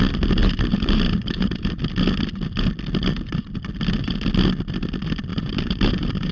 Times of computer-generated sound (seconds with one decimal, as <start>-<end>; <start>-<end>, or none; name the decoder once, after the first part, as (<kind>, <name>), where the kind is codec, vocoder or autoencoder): 0.4-1.8 (vocoder, BigVGAN v2); 5.3-6.3